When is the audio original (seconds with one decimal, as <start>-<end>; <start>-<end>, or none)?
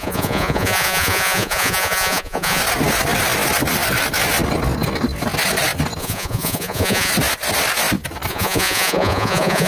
2.6-6.0; 7.1-8.3